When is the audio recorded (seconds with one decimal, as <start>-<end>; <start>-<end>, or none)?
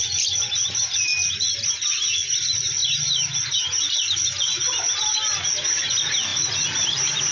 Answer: 0.0-1.1; 1.7-6.3